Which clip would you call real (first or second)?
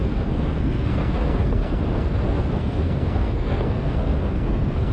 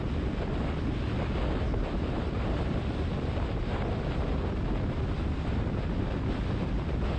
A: second